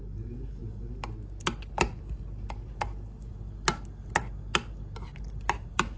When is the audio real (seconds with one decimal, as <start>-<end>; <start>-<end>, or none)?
0.0-5.1